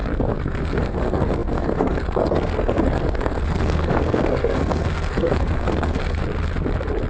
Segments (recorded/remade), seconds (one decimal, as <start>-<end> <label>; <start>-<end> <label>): 0.0-6.2 remade; 6.2-7.1 recorded